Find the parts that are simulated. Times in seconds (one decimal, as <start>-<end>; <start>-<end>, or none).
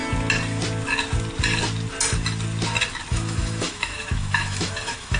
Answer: 3.1-5.2